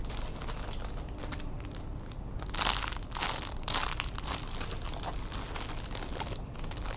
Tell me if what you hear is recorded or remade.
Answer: recorded